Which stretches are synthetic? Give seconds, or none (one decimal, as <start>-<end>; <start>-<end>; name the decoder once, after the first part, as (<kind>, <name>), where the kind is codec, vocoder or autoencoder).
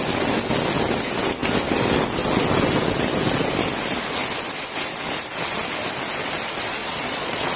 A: 6.8-7.6 (vocoder, Vocos)